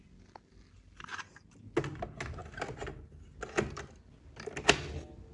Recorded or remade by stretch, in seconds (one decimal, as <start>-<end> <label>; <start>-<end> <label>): 0.0-5.3 recorded